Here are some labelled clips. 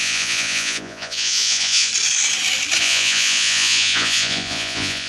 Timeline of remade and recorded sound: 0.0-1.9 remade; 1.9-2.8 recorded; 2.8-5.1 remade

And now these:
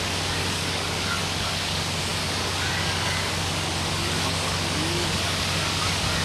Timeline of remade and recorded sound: 0.0-6.2 remade

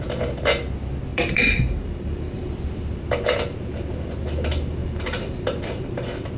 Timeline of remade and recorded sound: 0.0-1.1 recorded; 1.1-2.5 remade; 2.5-4.8 recorded; 4.8-5.9 remade; 5.9-6.4 recorded

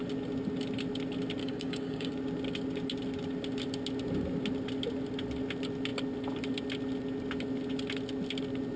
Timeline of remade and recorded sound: 0.0-1.4 recorded; 1.4-2.1 remade; 2.1-8.8 recorded